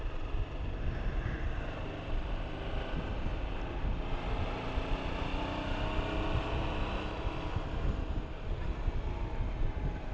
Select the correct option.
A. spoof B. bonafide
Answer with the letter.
B